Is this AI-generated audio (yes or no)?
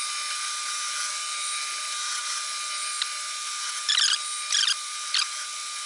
yes